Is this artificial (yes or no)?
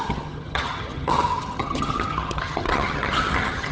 yes